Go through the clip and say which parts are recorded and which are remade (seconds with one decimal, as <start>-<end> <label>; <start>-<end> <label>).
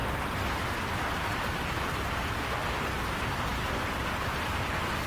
0.0-5.1 recorded